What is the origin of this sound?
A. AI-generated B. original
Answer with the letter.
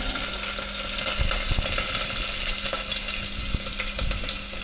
B